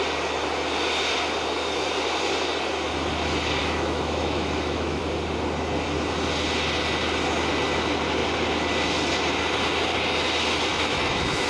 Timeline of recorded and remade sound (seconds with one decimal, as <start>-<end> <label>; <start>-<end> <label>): 0.0-3.6 recorded; 3.6-5.0 remade; 5.0-10.7 recorded; 10.7-11.5 remade